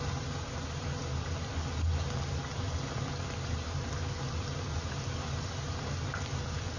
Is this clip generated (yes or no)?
no